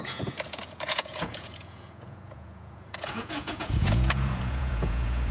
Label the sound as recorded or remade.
remade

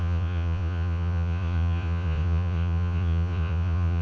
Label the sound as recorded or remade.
remade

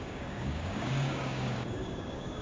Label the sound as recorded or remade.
remade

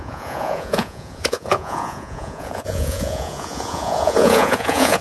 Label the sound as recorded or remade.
remade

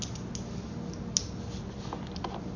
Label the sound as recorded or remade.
recorded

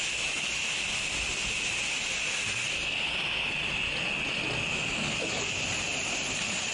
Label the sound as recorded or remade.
recorded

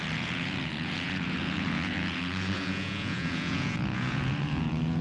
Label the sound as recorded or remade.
remade